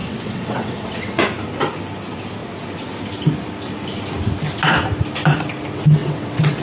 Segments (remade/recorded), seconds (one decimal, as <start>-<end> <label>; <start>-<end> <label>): 0.0-1.2 remade; 1.2-6.0 recorded; 6.0-6.6 remade